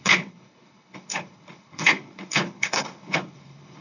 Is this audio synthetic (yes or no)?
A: yes